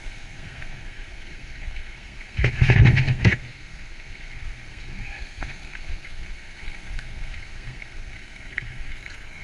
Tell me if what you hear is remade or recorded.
remade